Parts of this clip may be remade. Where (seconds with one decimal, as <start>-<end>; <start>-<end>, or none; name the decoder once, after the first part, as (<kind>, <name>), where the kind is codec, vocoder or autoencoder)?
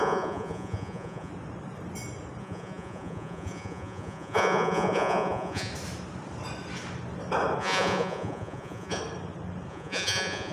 0.0-1.3 (vocoder, Vocos); 2.4-5.7; 7.6-9.0; 9.7-10.5